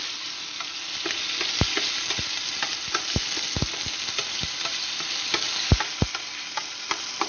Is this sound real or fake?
real